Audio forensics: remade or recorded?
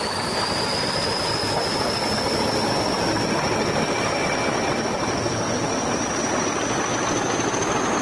recorded